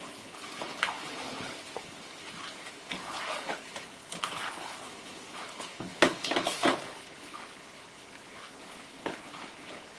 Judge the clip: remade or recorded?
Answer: remade